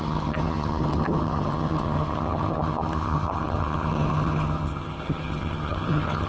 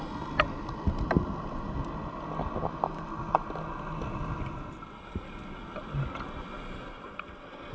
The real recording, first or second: second